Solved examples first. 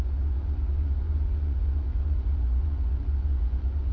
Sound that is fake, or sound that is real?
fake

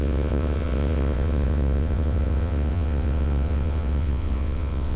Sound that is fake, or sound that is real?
fake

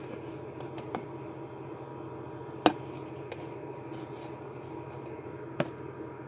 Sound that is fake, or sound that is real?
real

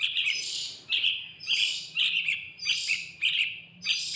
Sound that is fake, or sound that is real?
fake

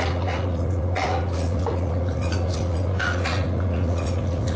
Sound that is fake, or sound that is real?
fake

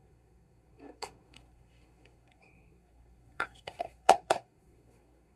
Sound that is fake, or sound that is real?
fake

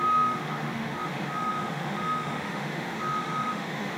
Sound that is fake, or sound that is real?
fake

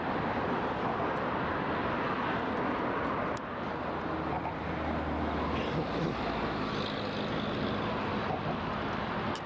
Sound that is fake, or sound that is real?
real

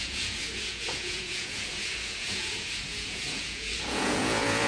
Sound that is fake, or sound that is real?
fake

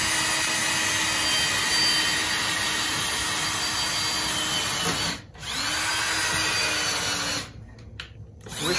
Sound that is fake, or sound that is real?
real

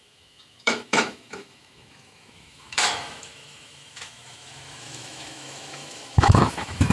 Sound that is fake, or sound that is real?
fake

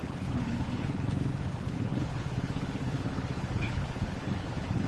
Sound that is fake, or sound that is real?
fake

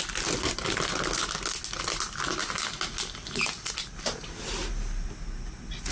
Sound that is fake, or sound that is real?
real